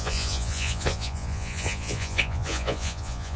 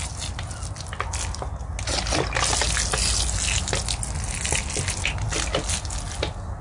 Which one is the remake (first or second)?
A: first